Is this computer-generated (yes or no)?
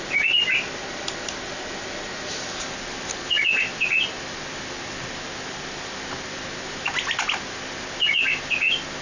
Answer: no